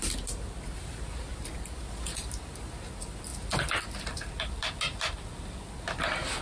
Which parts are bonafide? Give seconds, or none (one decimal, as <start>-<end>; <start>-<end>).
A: 0.0-6.4